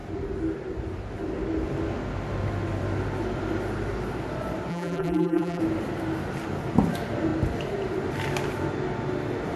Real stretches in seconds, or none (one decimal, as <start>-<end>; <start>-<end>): 0.0-4.7; 5.6-9.6